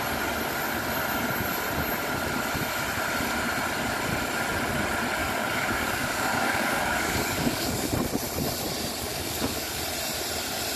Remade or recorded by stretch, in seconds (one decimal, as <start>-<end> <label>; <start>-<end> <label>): 0.0-5.2 recorded; 5.2-7.9 remade; 7.9-9.1 recorded; 9.1-9.8 remade; 9.8-10.8 recorded